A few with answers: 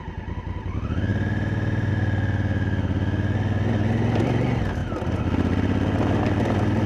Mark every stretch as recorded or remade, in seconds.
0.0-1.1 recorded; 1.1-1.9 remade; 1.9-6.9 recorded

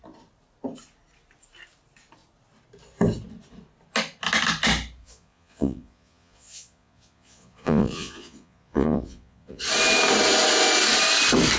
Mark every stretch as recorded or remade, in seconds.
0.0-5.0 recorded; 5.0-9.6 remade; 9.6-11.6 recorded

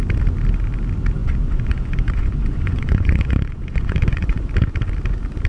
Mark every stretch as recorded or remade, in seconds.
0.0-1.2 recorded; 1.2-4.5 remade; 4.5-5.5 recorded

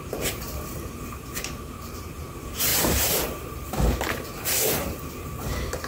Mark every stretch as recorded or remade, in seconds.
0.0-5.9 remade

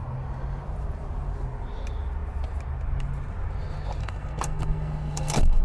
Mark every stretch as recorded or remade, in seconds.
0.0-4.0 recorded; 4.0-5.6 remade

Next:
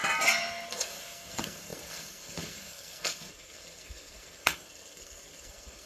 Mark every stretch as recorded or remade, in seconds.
0.0-0.7 recorded; 0.7-5.9 remade

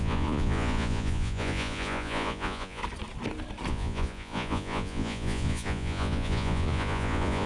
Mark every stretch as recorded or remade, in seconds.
0.0-2.8 remade; 2.8-3.7 recorded; 3.7-7.5 remade

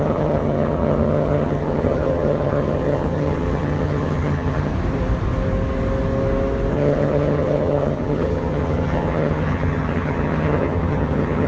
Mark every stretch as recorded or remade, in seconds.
0.0-4.7 remade; 4.7-6.7 recorded; 6.7-11.5 remade